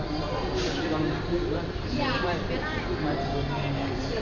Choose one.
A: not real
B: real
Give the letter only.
B